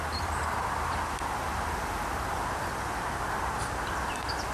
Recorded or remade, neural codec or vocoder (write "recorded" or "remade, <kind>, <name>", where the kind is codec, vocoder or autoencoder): remade, vocoder, BigVGAN v2